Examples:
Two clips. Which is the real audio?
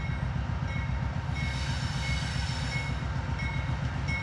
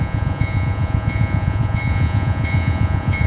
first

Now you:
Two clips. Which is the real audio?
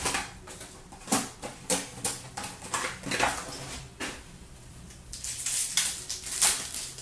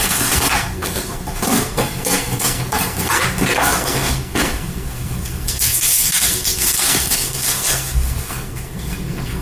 first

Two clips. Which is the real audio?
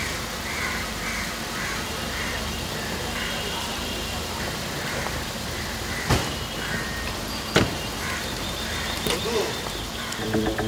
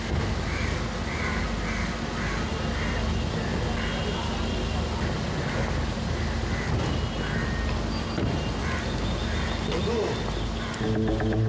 second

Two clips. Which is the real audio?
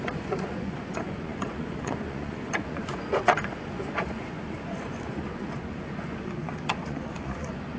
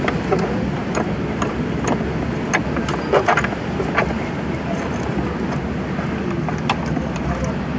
second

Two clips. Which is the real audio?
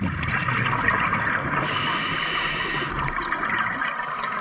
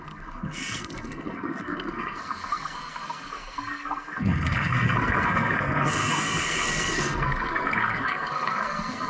first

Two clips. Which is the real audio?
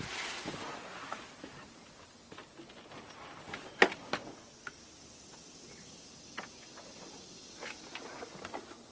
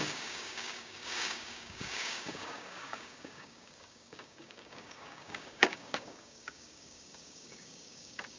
first